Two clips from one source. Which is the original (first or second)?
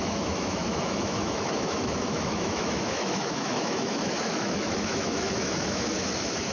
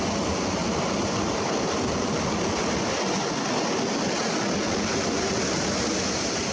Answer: second